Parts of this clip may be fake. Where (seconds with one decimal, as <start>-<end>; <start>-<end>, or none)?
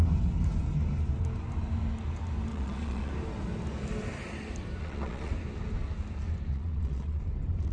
2.5-3.1; 4.8-5.3; 6.5-7.2